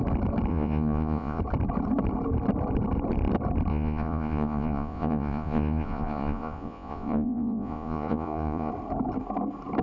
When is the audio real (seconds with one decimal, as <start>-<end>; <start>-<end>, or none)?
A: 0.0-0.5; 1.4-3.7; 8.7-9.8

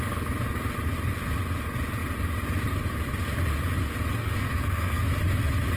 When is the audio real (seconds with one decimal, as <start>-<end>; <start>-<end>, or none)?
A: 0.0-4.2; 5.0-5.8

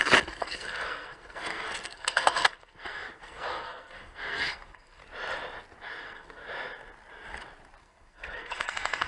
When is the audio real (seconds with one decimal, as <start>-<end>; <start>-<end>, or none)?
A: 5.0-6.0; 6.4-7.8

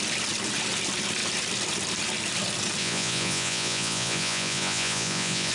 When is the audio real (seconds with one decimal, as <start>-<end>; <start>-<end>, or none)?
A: 0.0-2.8

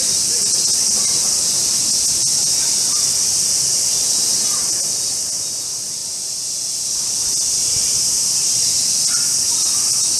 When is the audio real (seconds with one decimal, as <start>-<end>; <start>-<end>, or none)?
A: 0.0-10.2